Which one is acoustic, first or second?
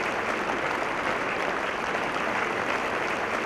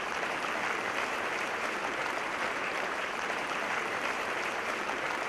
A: first